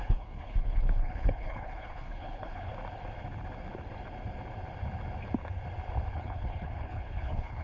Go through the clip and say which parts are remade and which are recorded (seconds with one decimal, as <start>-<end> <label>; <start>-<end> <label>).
0.0-2.7 remade; 2.7-6.1 recorded; 6.1-7.6 remade